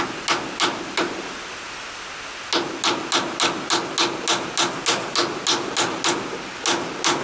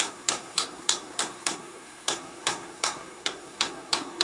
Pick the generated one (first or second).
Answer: second